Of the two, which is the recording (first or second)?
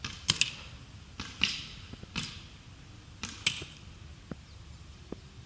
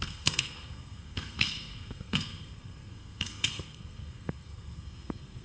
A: first